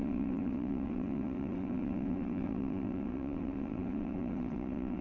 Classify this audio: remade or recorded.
remade